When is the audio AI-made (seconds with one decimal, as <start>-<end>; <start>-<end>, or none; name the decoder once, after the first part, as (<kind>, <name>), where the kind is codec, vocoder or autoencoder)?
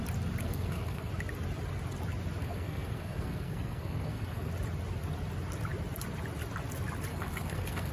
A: 0.4-1.1 (codec, SNAC); 2.4-4.5; 7.1-7.9